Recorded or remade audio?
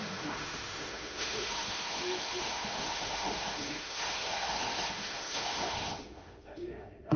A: remade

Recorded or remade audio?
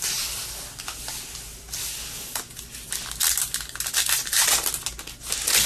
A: recorded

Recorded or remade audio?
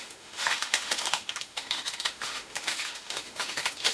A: remade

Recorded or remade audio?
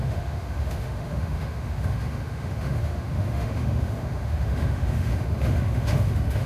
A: remade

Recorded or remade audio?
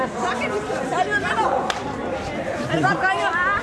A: recorded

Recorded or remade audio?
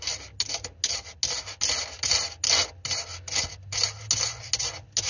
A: recorded